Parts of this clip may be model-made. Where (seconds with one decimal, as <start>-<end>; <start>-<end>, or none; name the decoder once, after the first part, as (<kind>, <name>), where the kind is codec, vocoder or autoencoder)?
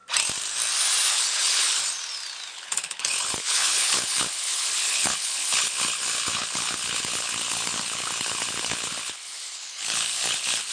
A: 1.1-1.8 (codec, HILCodec); 2.5-10.7